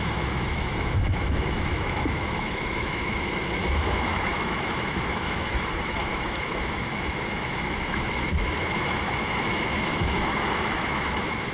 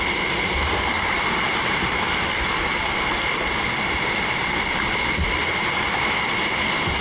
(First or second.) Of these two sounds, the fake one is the first